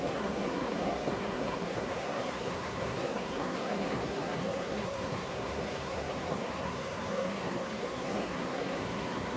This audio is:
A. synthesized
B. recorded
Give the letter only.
A